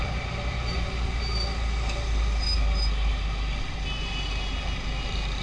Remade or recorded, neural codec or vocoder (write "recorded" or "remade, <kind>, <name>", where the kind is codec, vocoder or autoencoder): recorded